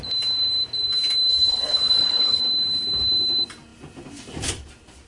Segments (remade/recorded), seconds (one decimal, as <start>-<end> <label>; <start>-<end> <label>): 0.0-1.3 recorded; 1.3-2.4 remade; 2.4-5.1 recorded